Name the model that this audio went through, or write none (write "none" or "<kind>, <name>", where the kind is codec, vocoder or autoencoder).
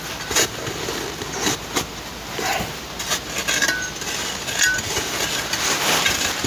none